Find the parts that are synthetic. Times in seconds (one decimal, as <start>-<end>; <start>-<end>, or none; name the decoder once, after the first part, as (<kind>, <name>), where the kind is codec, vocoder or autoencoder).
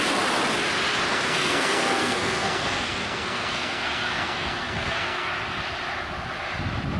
1.1-5.3 (codec, SNAC)